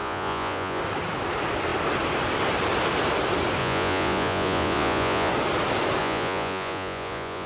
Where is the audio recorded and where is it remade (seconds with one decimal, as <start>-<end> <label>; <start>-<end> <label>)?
0.0-0.8 remade; 0.8-3.6 recorded; 3.6-5.3 remade; 5.3-6.0 recorded; 6.0-7.5 remade